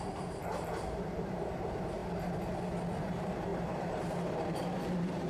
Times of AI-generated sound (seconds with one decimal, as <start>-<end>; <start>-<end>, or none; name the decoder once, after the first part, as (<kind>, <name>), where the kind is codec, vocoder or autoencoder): 0.0-2.0 (vocoder, BigVGAN v2); 3.0-5.3